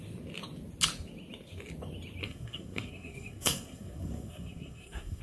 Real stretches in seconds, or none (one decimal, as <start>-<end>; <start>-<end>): 0.0-2.2